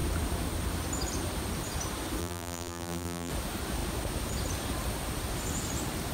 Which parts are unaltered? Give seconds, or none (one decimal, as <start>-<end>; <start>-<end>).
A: 0.0-2.2; 3.3-6.1

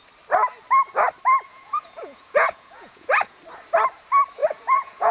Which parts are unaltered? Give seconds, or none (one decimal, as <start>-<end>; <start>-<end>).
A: 0.0-1.5; 3.4-4.4

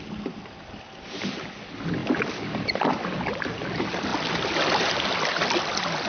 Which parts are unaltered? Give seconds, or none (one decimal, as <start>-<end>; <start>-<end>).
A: 0.0-6.1

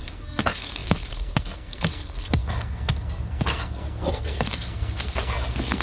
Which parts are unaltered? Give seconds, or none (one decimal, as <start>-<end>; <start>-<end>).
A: none